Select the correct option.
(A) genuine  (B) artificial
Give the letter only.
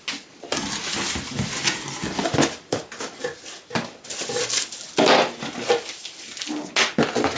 A